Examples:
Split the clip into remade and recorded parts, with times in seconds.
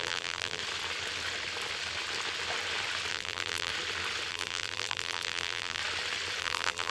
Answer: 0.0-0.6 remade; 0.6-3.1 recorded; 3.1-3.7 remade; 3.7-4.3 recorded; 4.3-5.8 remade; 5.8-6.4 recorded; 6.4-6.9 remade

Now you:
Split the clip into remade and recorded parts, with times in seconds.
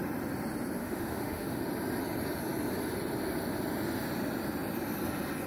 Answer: 0.0-0.8 recorded; 0.8-1.6 remade; 1.6-5.5 recorded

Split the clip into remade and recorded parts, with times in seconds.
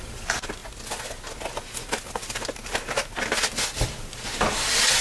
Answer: 0.0-5.0 recorded